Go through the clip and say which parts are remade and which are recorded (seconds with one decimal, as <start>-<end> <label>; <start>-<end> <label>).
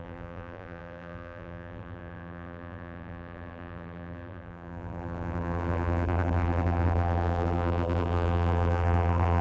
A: 0.0-9.4 remade